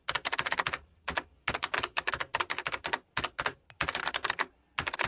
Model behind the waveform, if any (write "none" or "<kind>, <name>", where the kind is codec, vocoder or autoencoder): none